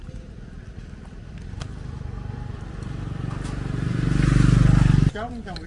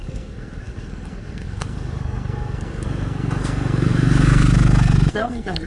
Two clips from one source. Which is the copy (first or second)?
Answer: second